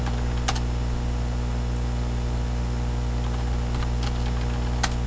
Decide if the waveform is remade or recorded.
recorded